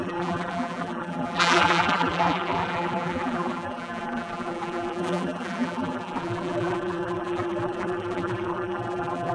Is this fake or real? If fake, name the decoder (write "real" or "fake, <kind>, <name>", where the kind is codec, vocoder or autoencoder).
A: fake, vocoder, BigVGAN v2